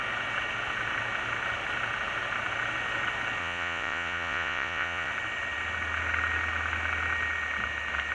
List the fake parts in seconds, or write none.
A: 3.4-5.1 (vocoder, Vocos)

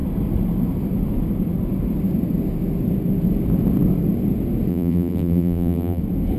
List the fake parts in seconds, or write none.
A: 4.7-6.0 (vocoder, BigVGAN v2)

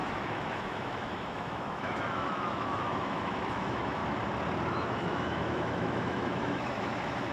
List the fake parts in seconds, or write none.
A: 0.0-4.0 (autoencoder, DAC-VAE); 4.7-7.3

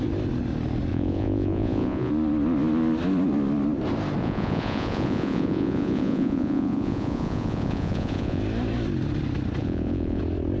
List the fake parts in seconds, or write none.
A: 0.9-2.1 (vocoder, Vocos); 4.2-8.4; 9.6-10.2

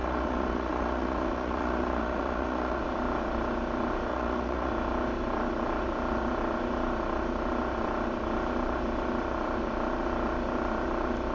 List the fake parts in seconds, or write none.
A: 0.0-2.8 (vocoder, Vocos); 4.1-4.7

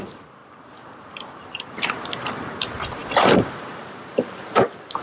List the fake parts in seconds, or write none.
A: 0.0-5.0 (vocoder, BigVGAN v2)

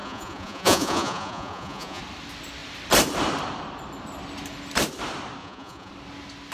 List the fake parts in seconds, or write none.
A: 0.0-2.0 (vocoder, Vocos); 5.4-5.9